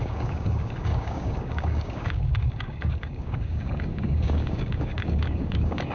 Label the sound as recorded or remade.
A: remade